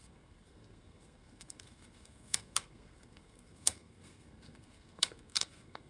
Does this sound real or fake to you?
fake